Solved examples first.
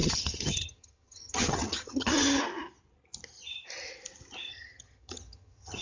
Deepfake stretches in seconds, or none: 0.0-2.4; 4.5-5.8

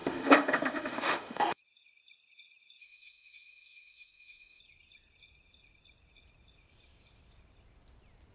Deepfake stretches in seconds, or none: 0.0-1.6; 2.8-4.6

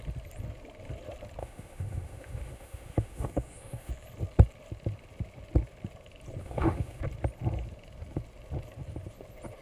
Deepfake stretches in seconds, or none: 1.4-3.9; 6.4-7.0

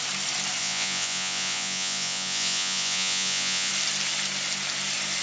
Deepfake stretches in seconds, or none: 0.6-3.7

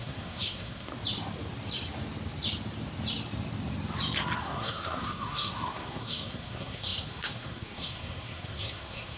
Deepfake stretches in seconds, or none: 0.0-0.9; 4.4-9.2

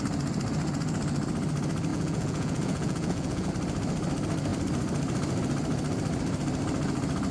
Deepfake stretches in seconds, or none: 1.9-3.5

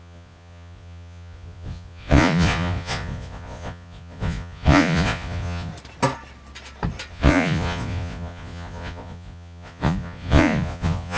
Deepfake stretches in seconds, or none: 0.0-5.7; 7.1-11.2